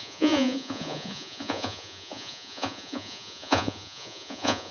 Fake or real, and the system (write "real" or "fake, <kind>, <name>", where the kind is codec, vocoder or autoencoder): fake, vocoder, Vocos